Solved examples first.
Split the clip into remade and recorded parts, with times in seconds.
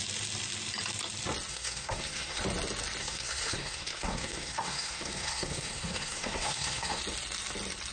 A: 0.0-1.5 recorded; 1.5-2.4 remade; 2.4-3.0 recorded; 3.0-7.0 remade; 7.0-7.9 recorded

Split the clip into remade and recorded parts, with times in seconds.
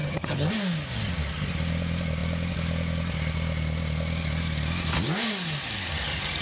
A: 0.0-0.5 remade; 0.5-6.4 recorded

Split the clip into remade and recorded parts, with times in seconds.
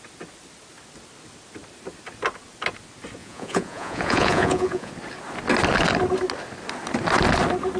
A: 0.0-3.2 recorded; 3.2-4.9 remade; 4.9-7.8 recorded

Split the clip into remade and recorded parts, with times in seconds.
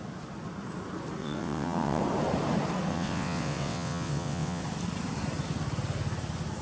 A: 0.0-1.2 recorded; 1.2-2.0 remade; 2.0-2.9 recorded; 2.9-4.6 remade; 4.6-6.6 recorded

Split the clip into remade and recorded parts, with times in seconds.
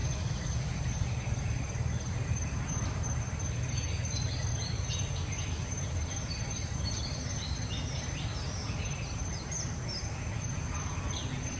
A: 0.0-1.4 recorded; 1.4-11.6 remade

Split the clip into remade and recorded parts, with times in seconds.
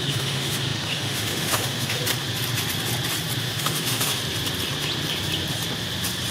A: 0.0-2.0 remade; 2.0-3.4 recorded; 3.4-4.2 remade; 4.2-6.3 recorded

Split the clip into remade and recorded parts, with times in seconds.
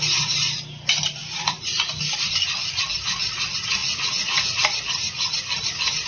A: 0.0-1.2 recorded; 1.2-1.7 remade; 1.7-3.8 recorded; 3.8-4.5 remade; 4.5-6.1 recorded